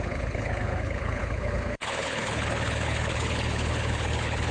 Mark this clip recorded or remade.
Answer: remade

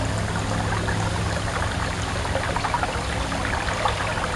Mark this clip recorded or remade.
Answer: recorded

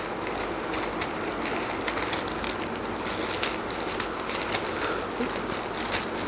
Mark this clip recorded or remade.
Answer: recorded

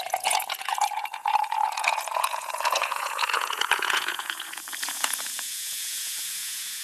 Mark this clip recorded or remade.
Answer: remade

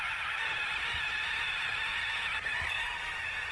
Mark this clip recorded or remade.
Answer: recorded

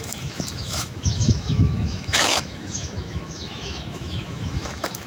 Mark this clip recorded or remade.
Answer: remade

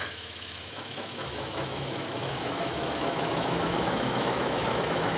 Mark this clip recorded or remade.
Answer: remade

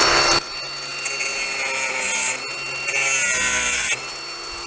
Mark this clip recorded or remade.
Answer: recorded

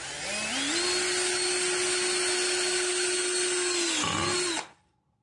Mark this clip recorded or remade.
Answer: recorded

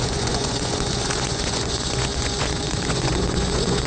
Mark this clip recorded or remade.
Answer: remade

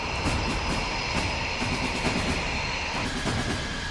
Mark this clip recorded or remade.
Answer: remade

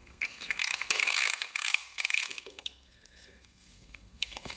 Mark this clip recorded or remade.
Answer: remade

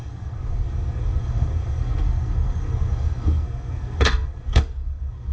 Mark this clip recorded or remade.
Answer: remade